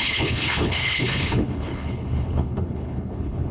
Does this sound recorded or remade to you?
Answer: remade